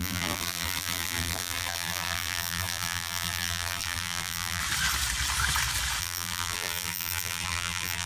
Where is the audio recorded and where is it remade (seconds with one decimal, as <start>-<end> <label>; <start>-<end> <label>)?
0.0-4.6 remade; 4.6-6.0 recorded; 6.0-8.1 remade